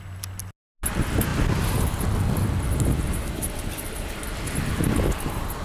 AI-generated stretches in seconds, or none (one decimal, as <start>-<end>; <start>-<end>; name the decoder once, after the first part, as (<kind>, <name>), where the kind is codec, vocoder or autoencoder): none